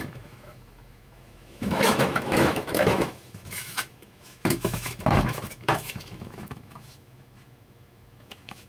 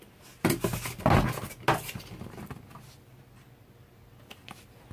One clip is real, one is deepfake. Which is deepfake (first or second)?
first